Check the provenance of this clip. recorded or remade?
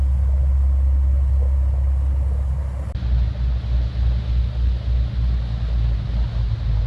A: recorded